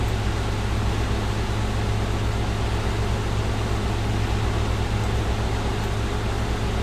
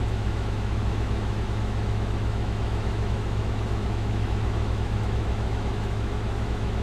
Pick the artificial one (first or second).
second